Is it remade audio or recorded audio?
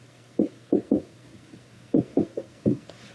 remade